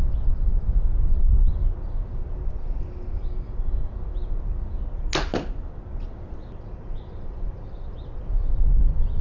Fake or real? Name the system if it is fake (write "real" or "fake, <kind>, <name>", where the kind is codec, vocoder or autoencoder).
real